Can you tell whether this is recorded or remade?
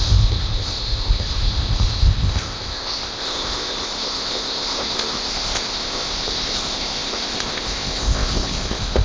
remade